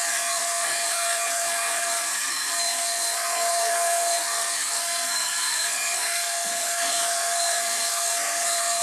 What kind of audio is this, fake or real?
fake